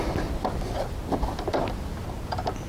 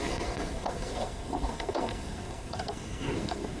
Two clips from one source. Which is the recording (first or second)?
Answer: first